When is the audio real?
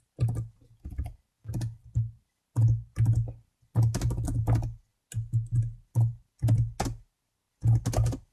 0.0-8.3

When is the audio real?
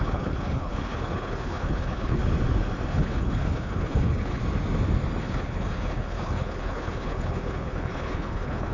2.2-2.9; 4.4-5.2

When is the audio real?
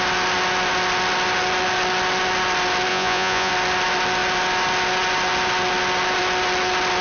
0.0-2.9; 3.5-7.0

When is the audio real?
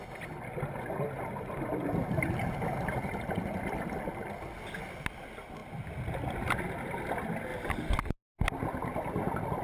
0.0-9.6